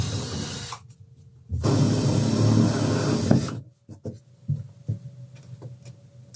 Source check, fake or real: real